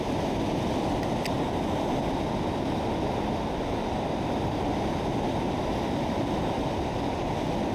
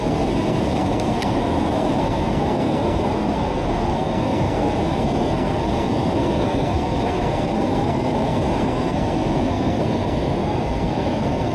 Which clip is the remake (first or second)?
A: second